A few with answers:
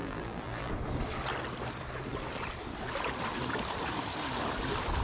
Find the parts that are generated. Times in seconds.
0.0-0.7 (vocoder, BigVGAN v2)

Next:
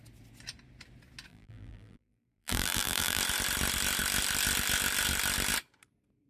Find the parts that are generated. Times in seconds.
1.3-3.2 (vocoder, BigVGAN v2)

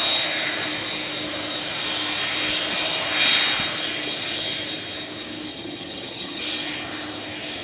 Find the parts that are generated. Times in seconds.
5.5-6.4 (vocoder, HiFi-GAN)

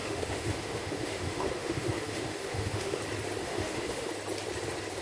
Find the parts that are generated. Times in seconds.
0.0-3.0 (autoencoder, DAC-VAE); 3.4-4.1

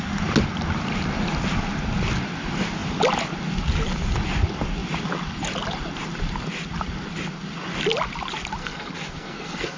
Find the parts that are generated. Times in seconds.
8.6-9.8 (codec, SNAC)

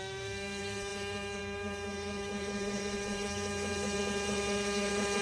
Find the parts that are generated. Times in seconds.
0.0-5.2 (autoencoder, DAC-VAE)